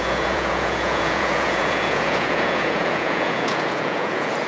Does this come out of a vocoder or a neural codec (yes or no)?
yes